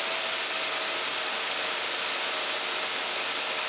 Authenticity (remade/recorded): recorded